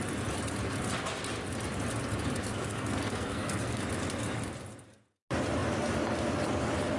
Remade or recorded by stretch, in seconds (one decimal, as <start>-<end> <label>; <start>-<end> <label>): 0.0-2.4 recorded; 2.4-3.8 remade; 3.8-7.0 recorded